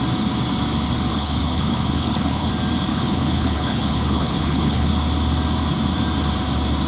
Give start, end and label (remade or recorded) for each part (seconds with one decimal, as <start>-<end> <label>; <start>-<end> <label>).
0.0-1.1 recorded; 1.1-2.5 remade; 2.5-2.9 recorded; 2.9-4.9 remade; 4.9-6.9 recorded